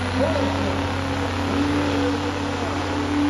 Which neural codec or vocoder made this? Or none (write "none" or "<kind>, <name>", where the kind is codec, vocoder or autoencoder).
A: none